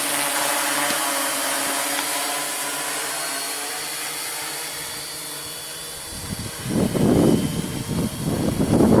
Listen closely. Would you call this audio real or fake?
real